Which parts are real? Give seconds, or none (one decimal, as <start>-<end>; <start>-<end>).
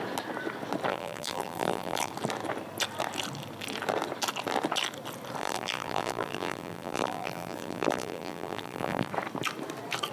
0.0-0.9; 2.1-5.4; 9.1-10.1